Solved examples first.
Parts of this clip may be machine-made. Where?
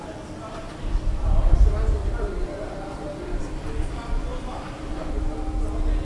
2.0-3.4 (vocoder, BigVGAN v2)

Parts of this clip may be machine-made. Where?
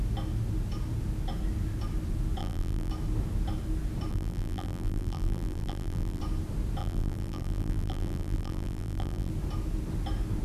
2.4-2.9 (vocoder, BigVGAN v2); 4.1-6.2; 6.8-9.3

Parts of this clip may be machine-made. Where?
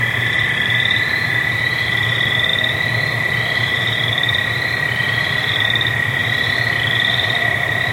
0.0-7.9 (vocoder, BigVGAN v2)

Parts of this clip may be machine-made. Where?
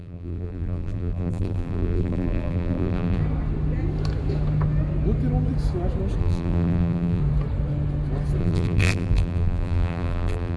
0.0-3.2 (vocoder, BigVGAN v2); 6.2-7.2; 8.4-10.6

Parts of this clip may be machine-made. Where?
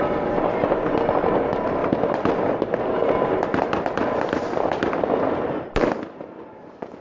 0.0-7.0 (vocoder, BigVGAN v2)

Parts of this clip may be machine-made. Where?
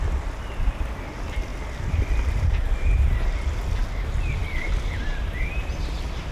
none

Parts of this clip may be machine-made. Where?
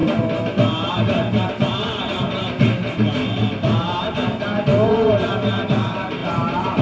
6.2-6.8 (vocoder, BigVGAN v2)